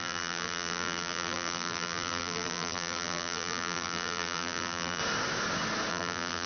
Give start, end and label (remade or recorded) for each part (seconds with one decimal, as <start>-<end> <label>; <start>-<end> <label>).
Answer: 0.0-5.0 remade; 5.0-5.9 recorded; 5.9-6.5 remade